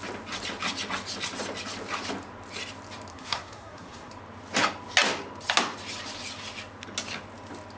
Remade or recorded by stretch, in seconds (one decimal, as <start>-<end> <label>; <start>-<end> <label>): 0.0-3.1 recorded; 3.1-4.1 remade; 4.1-7.8 recorded